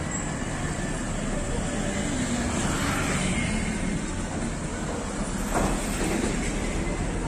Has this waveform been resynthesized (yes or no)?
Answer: no